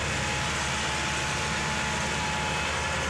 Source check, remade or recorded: recorded